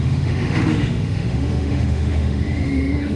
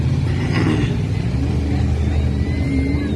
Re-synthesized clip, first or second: first